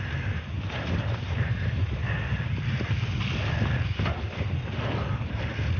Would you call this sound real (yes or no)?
yes